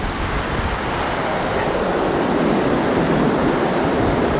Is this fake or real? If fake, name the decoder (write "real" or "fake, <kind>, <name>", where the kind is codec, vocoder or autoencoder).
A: real